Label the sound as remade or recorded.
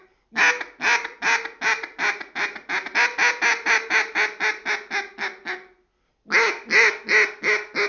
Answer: recorded